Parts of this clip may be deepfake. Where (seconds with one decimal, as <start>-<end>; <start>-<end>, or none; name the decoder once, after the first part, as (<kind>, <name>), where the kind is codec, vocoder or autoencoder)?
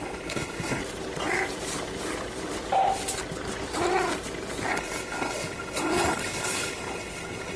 0.0-0.8 (codec, HILCodec); 4.7-7.6